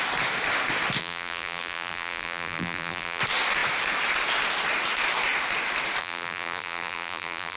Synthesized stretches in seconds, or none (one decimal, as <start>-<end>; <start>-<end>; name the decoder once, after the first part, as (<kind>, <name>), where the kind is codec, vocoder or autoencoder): 1.0-3.2 (vocoder, BigVGAN v2); 6.0-7.6